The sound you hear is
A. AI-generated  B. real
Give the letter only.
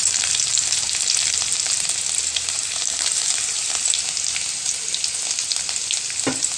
B